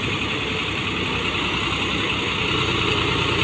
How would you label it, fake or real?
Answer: real